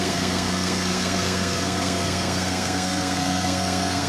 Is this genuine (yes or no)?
no